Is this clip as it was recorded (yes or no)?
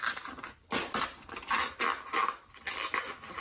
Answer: yes